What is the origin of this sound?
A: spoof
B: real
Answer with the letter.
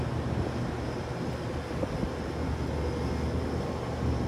B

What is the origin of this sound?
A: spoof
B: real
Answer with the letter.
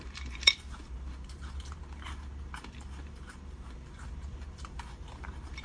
A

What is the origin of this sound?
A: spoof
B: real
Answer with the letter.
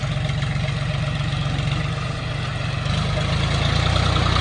B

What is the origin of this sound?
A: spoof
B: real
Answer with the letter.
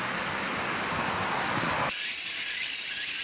A